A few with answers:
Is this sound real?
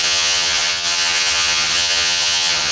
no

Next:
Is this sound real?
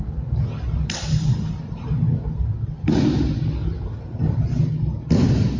yes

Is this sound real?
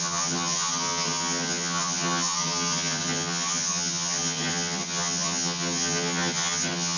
no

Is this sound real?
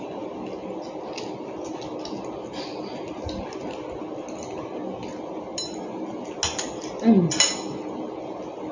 yes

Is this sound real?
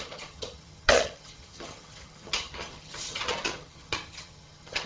no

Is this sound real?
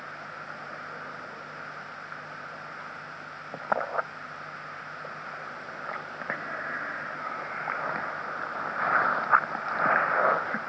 yes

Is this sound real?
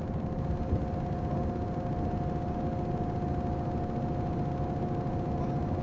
yes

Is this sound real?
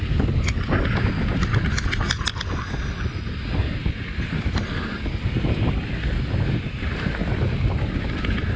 yes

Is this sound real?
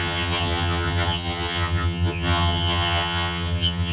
no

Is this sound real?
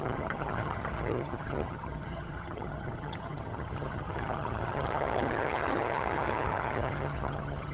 no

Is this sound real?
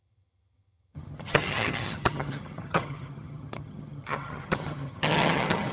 no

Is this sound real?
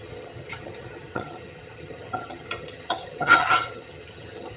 no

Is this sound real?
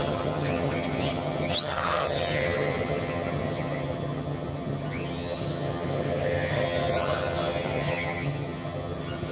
no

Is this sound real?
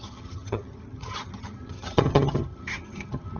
no